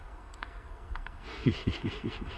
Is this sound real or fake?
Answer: fake